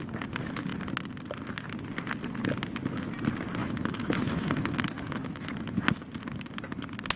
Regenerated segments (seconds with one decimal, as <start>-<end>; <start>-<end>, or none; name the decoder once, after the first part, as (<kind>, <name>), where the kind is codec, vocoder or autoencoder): 3.6-5.5 (autoencoder, DAC-VAE)